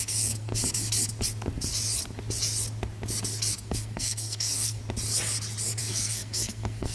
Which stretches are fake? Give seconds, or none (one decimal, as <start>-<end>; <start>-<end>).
0.0-0.6; 3.5-4.8; 5.8-6.9